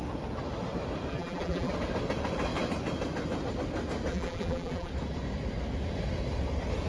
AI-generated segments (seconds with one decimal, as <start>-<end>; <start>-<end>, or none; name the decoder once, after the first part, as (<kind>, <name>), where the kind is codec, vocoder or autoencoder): 1.1-1.7 (vocoder, BigVGAN v2); 4.1-4.9